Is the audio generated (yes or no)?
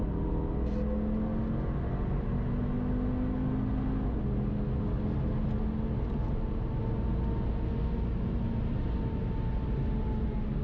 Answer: no